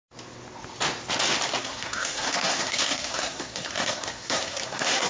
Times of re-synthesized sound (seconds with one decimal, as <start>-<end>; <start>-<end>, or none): 1.6-5.1